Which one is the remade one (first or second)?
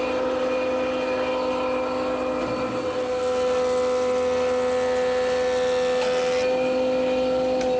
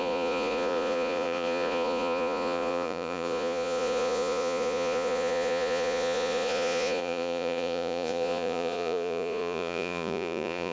second